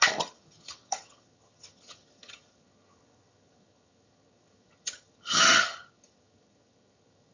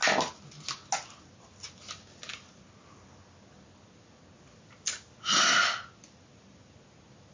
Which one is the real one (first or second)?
second